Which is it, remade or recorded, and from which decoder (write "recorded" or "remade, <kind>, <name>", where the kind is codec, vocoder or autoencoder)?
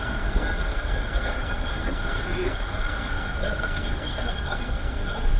remade, codec, SNAC